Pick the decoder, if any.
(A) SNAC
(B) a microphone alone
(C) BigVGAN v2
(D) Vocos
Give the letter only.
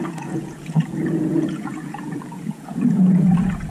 D